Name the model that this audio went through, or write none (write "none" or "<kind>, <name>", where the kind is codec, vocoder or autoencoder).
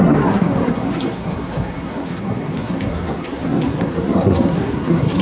codec, SNAC